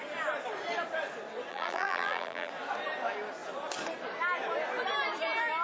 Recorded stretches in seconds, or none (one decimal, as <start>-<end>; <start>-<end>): 0.0-1.5; 2.5-5.6